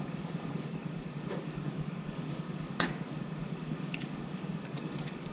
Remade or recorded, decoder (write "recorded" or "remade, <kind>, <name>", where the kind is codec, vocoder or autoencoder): remade, codec, DAC